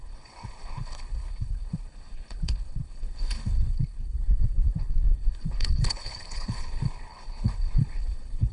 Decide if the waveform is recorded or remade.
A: remade